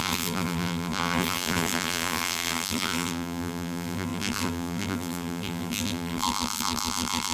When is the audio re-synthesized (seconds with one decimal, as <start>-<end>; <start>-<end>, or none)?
0.0-7.3